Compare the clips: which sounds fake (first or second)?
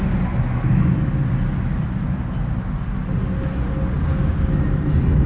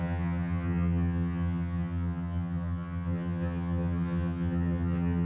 second